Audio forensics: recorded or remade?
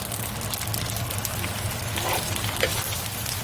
recorded